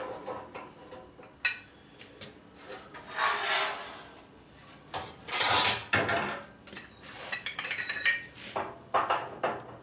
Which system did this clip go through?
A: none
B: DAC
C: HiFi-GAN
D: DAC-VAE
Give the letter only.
A